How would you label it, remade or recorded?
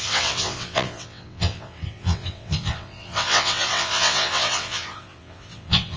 remade